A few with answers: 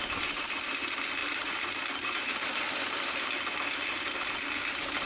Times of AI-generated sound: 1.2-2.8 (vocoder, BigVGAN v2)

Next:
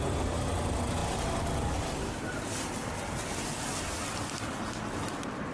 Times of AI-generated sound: 1.0-1.7 (vocoder, BigVGAN v2)

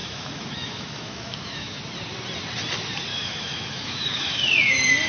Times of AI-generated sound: 0.0-1.8 (autoencoder, DAC-VAE); 3.1-4.4

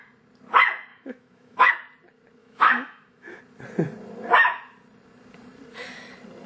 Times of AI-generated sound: 0.9-1.7 (autoencoder, DAC-VAE); 2.4-3.4

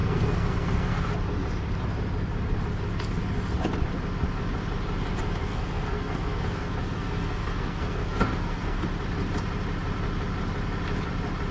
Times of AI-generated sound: 0.0-1.1 (codec, SNAC); 5.4-8.8

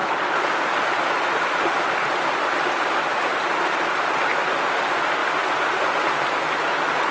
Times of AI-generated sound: 3.8-5.2 (vocoder, BigVGAN v2); 6.1-7.1